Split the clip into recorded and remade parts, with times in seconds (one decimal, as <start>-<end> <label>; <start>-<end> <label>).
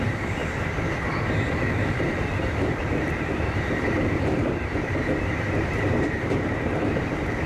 0.0-0.4 remade; 0.4-2.0 recorded; 2.0-7.5 remade